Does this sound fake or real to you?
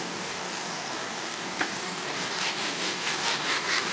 fake